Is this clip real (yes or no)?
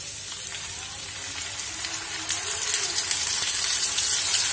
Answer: yes